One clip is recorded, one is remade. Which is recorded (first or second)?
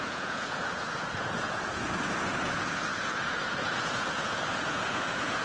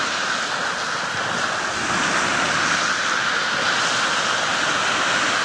second